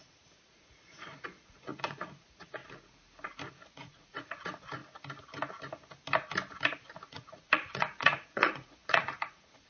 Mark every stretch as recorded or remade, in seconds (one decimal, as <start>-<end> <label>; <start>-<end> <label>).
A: 0.0-2.6 remade; 2.6-3.5 recorded; 3.5-4.8 remade; 4.8-7.1 recorded; 7.1-9.7 remade